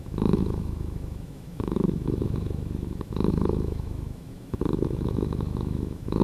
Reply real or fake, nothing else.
fake